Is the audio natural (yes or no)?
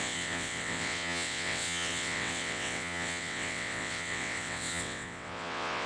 no